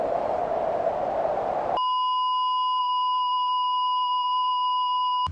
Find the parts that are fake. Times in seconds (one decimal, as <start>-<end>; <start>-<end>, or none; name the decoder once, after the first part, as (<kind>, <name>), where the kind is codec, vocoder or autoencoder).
0.0-0.4 (vocoder, BigVGAN v2); 2.8-5.3